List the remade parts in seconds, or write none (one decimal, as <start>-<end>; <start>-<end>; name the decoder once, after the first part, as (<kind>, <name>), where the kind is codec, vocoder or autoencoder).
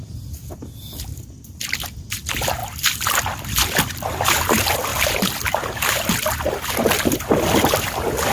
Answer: none